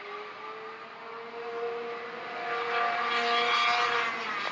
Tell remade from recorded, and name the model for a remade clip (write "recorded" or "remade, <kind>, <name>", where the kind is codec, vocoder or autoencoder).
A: recorded